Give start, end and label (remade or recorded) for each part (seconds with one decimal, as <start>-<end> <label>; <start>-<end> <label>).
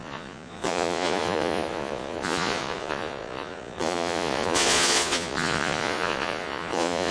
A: 0.0-7.1 remade